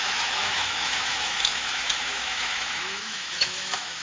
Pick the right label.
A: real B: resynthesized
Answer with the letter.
B